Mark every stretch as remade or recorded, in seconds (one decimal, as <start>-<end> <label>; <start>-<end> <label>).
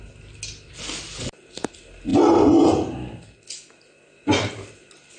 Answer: 0.0-5.2 recorded